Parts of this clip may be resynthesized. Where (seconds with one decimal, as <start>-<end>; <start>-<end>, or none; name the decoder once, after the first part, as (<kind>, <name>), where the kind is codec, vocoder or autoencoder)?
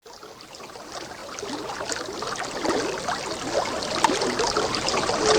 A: none